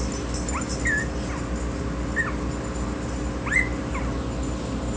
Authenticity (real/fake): real